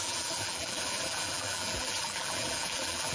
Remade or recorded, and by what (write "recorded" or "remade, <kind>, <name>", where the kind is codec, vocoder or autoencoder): remade, vocoder, BigVGAN v2